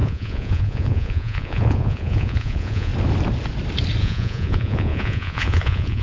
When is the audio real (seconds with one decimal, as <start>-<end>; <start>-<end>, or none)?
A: 2.9-4.0